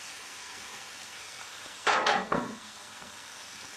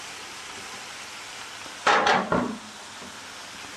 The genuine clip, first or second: second